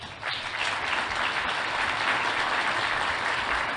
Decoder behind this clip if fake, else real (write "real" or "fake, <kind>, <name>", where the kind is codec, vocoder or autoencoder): real